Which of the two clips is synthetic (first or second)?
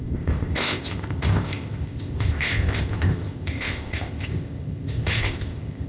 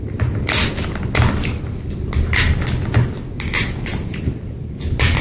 first